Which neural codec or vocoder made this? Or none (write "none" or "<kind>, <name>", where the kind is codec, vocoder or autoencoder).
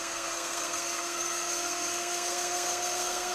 codec, SNAC